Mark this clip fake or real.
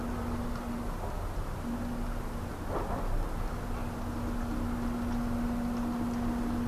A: real